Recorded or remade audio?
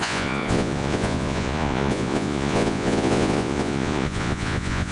remade